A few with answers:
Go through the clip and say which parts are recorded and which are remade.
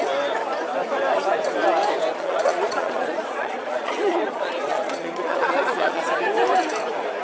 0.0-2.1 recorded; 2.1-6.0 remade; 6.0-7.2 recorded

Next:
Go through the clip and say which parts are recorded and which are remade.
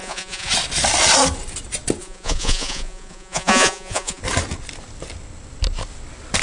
0.0-0.5 remade; 0.5-2.0 recorded; 2.0-4.2 remade; 4.2-6.4 recorded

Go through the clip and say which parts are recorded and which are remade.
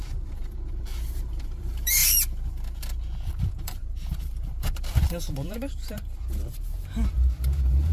0.0-2.0 remade; 2.0-3.5 recorded; 3.5-7.9 remade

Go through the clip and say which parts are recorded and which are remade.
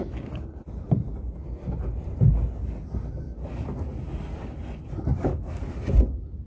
0.0-5.1 recorded; 5.1-5.7 remade; 5.7-6.5 recorded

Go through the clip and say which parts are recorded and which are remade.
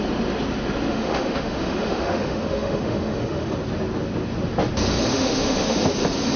0.0-0.9 recorded; 0.9-3.5 remade; 3.5-5.1 recorded; 5.1-5.8 remade; 5.8-6.4 recorded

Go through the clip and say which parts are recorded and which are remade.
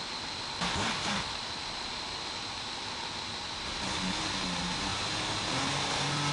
0.0-6.3 recorded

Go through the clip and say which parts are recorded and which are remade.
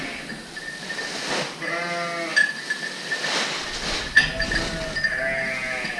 0.0-6.0 recorded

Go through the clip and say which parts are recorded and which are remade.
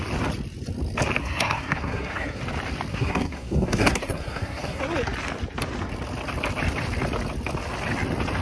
0.0-1.2 recorded; 1.2-2.4 remade; 2.4-2.9 recorded; 2.9-4.8 remade; 4.8-8.4 recorded